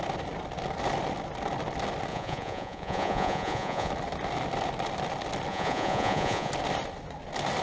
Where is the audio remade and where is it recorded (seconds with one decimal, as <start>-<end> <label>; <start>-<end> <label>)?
0.0-2.1 recorded; 2.1-3.9 remade; 3.9-5.5 recorded; 5.5-6.5 remade; 6.5-7.6 recorded